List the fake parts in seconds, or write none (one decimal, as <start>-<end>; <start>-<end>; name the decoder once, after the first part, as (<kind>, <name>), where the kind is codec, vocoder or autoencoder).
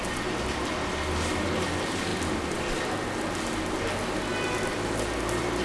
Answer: none